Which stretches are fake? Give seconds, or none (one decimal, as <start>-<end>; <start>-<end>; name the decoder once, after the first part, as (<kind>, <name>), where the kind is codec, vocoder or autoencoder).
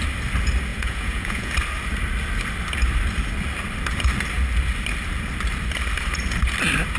0.7-1.5 (vocoder, Vocos)